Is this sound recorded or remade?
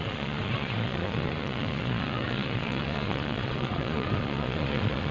remade